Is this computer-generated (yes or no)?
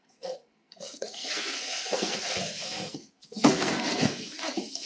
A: yes